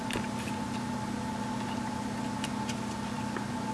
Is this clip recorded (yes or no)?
yes